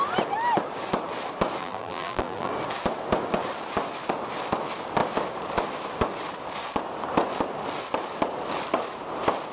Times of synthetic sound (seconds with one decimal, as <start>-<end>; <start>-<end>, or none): 1.6-2.5